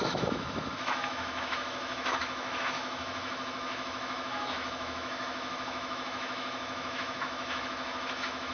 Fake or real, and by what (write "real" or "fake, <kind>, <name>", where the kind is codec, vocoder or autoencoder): fake, autoencoder, DAC-VAE